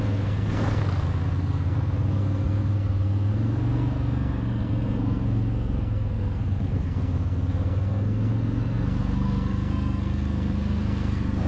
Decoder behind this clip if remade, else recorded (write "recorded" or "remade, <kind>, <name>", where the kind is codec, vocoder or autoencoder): remade, codec, SNAC